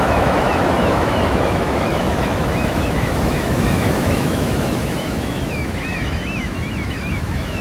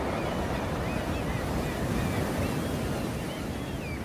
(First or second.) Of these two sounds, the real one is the second